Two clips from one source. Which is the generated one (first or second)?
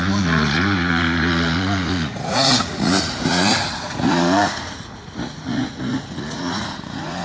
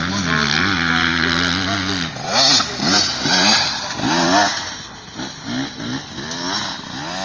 first